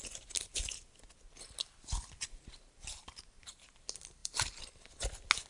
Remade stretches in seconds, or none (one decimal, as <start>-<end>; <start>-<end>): 2.5-3.7; 4.2-4.8